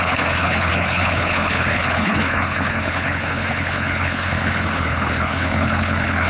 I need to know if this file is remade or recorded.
remade